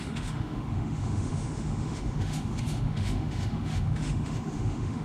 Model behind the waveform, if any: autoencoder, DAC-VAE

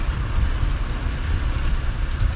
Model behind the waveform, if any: none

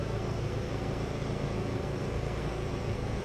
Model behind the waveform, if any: codec, SNAC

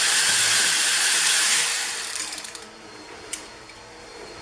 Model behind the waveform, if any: vocoder, BigVGAN v2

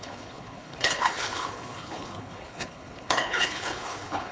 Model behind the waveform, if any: codec, HILCodec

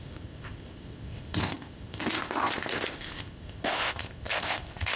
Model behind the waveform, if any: codec, ZipCodec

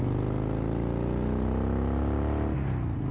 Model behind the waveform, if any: none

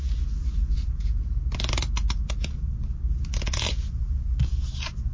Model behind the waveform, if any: none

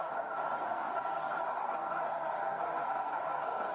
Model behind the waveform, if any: codec, SNAC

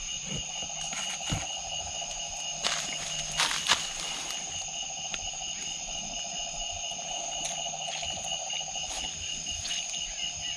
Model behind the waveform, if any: none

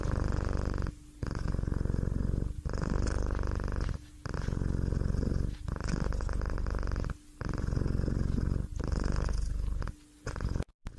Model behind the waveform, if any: none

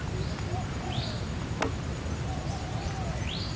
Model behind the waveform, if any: none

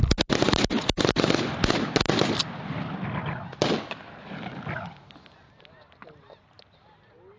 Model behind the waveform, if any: none